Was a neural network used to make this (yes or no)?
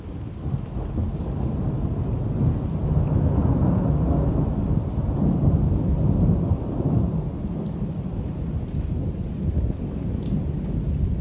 no